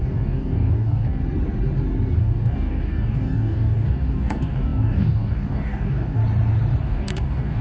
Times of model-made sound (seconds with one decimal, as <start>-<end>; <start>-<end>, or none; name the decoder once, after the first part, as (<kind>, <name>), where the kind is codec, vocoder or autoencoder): 0.0-1.2 (codec, DAC); 2.2-6.2; 6.8-7.6